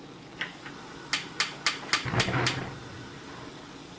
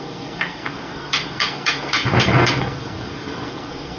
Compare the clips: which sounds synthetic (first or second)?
second